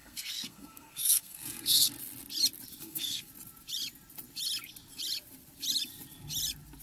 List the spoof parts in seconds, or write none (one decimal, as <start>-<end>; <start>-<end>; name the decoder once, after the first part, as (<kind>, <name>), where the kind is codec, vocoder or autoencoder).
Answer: 0.0-1.9 (codec, SNAC); 2.8-3.3